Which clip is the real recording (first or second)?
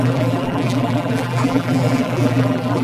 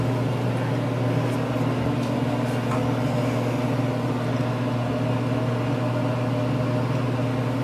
second